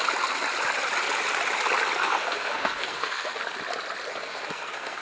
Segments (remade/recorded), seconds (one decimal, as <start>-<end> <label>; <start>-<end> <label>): 0.0-2.0 recorded; 2.0-3.4 remade; 3.4-4.1 recorded; 4.1-5.0 remade